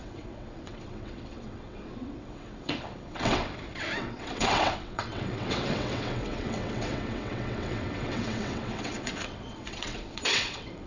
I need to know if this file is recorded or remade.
remade